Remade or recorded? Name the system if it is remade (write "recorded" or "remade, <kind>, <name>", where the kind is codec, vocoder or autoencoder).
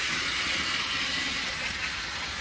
recorded